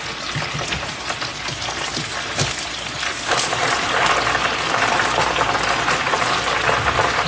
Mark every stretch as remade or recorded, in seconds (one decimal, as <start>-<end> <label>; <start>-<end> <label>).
0.0-7.3 recorded